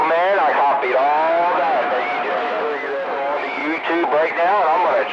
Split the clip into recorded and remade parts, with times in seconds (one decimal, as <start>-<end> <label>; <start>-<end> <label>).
0.0-3.1 recorded; 3.1-3.6 remade; 3.6-4.5 recorded; 4.5-5.1 remade